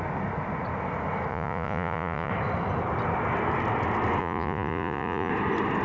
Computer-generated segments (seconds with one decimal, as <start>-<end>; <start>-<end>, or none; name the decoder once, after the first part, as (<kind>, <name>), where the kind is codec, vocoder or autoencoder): 1.3-2.3 (vocoder, Vocos); 4.2-5.3